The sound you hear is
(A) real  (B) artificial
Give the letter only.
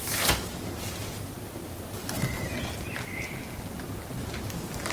A